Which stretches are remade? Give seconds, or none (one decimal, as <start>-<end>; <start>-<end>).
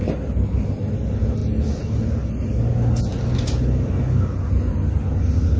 none